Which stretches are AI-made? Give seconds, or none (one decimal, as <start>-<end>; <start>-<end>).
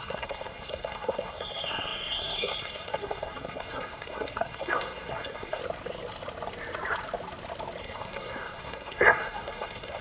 0.0-5.6; 7.8-10.0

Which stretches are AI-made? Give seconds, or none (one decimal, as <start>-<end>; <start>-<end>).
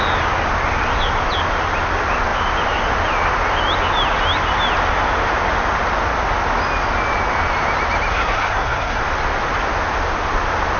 8.1-9.0